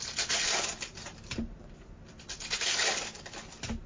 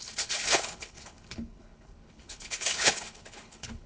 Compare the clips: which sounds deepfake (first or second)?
second